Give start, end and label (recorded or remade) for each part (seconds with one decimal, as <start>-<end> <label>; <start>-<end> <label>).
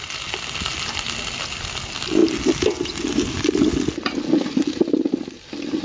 0.0-5.8 recorded